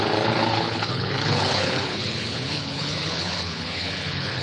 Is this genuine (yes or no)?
no